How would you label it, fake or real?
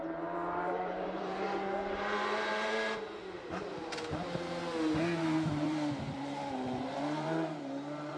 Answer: fake